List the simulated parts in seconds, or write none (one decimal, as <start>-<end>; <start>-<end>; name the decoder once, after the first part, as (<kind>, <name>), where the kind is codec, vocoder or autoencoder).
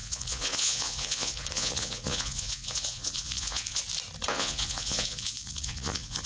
0.0-3.8 (vocoder, Vocos); 4.3-6.3